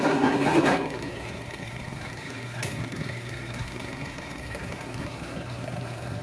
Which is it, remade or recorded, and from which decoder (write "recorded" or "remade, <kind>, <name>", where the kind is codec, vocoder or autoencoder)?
remade, codec, SNAC